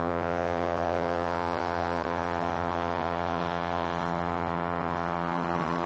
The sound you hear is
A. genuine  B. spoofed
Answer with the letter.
B